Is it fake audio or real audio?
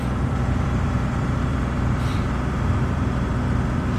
fake